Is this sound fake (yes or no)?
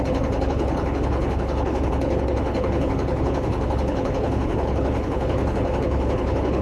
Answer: yes